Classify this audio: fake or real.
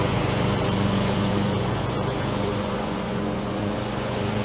fake